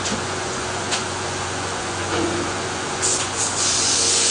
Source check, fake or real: fake